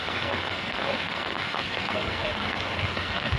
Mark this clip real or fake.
fake